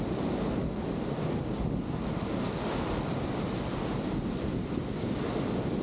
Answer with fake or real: real